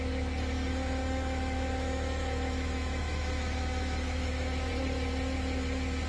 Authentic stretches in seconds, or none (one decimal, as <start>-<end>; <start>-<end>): 0.0-1.0; 4.7-6.1